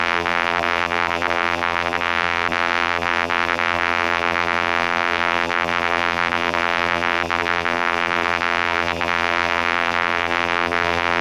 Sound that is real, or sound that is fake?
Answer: fake